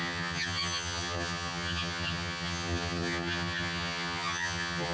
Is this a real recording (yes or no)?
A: no